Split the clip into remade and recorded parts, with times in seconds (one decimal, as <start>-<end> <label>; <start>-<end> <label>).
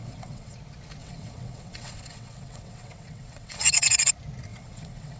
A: 0.0-0.5 remade; 0.5-1.0 recorded; 1.0-4.1 remade; 4.1-4.5 recorded; 4.5-5.2 remade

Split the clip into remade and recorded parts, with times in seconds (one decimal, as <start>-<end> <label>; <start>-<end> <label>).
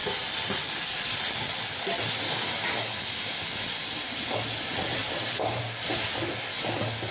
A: 0.0-5.0 recorded; 5.0-5.8 remade; 5.8-7.1 recorded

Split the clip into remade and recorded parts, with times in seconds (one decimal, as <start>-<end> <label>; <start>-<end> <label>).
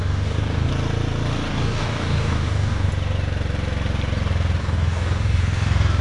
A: 0.0-0.7 remade; 0.7-1.5 recorded; 1.5-2.9 remade; 2.9-4.6 recorded; 4.6-6.0 remade